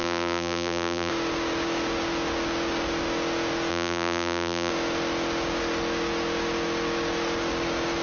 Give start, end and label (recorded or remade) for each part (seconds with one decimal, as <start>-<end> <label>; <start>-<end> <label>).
0.0-1.1 remade; 1.1-3.7 recorded; 3.7-4.7 remade; 4.7-8.0 recorded